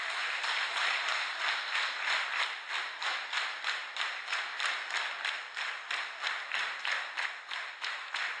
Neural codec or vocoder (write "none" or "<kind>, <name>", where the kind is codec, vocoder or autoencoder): none